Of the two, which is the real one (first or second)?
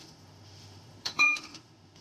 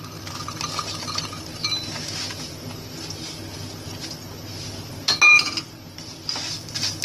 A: second